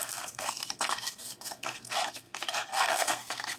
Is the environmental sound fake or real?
fake